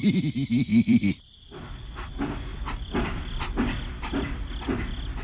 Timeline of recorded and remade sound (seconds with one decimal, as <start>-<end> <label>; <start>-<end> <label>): 0.0-0.7 recorded; 0.7-2.1 remade; 2.1-2.5 recorded; 2.5-3.9 remade; 3.9-5.2 recorded